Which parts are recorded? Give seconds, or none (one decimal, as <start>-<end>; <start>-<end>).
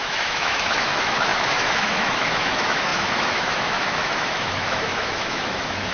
none